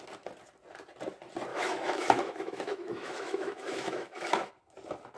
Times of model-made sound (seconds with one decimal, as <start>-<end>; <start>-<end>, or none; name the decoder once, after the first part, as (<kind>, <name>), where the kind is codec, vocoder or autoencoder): 1.5-4.5 (autoencoder, DAC-VAE)